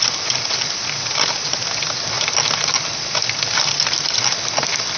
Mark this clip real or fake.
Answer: real